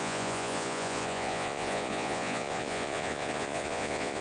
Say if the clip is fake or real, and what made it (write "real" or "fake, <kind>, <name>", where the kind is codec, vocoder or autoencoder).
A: fake, vocoder, Vocos